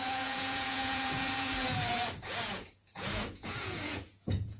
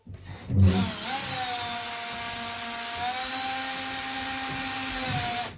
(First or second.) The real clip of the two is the second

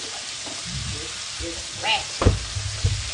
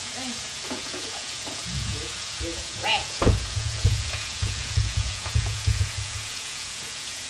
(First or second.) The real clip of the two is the first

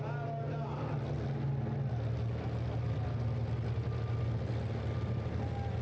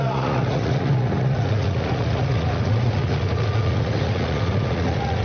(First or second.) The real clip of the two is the first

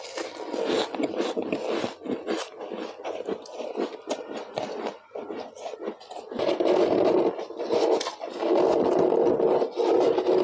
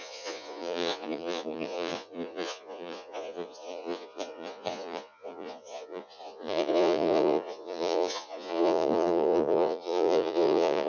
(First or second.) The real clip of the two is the first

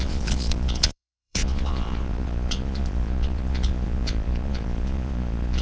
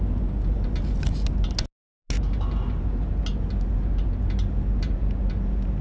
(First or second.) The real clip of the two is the second